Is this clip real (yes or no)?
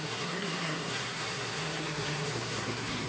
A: no